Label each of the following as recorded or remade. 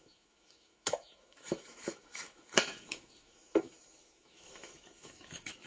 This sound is remade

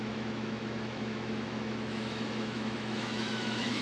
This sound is remade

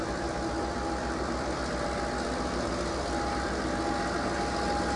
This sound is recorded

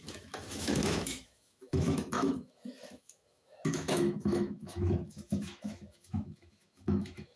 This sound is remade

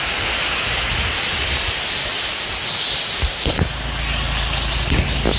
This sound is recorded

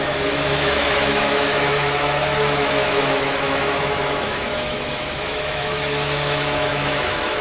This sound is remade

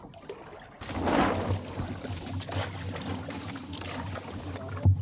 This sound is recorded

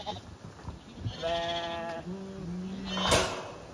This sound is recorded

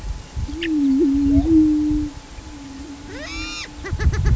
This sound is recorded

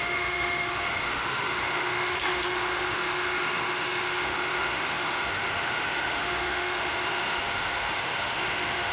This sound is remade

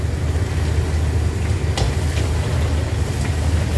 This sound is recorded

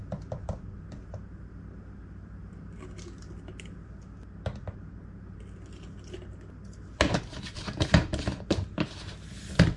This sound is recorded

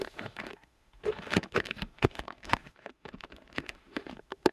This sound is remade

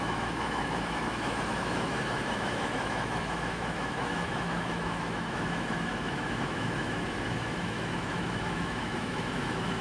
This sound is remade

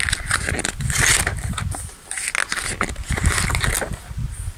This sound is recorded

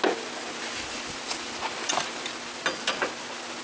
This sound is recorded